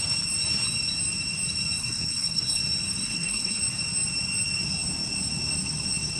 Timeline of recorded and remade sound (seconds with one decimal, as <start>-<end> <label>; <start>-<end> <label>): 0.0-1.8 recorded; 1.8-2.6 remade; 2.6-3.0 recorded; 3.0-3.6 remade; 3.6-6.2 recorded